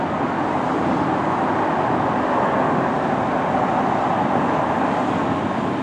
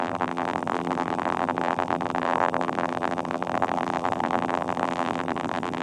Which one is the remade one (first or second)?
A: second